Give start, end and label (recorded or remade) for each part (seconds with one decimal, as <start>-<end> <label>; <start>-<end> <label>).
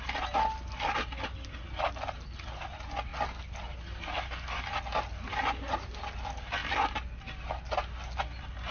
0.0-8.7 recorded